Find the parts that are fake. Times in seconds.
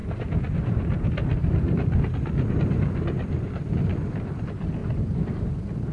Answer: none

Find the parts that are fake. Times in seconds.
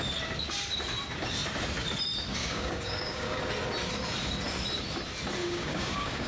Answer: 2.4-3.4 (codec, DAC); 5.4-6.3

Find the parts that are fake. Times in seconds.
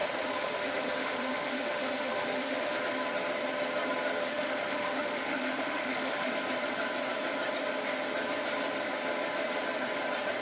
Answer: 0.0-2.8 (autoencoder, DAC-VAE); 4.3-6.3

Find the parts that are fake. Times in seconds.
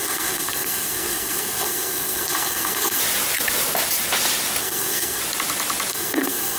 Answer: 0.0-3.0 (codec, SNAC); 4.6-5.2; 5.9-6.6